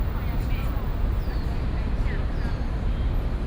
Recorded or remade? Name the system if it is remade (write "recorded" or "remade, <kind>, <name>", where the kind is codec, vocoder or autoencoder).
recorded